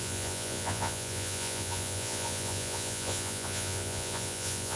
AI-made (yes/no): yes